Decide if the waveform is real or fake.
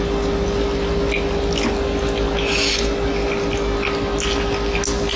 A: real